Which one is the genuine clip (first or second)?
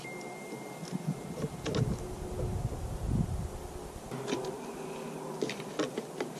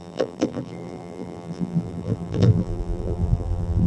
first